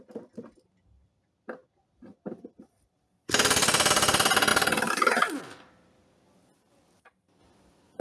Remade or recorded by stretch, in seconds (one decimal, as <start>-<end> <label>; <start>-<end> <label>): 0.0-8.0 recorded